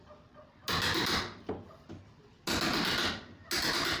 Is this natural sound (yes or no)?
yes